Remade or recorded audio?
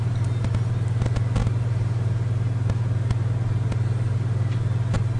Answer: recorded